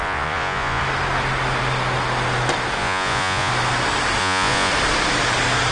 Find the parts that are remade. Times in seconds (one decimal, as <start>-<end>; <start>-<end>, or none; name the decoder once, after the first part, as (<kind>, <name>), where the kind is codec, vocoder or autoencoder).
0.0-0.8 (vocoder, Vocos); 2.8-3.5; 4.2-4.7